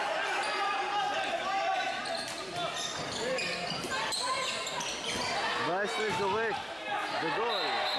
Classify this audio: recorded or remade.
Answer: recorded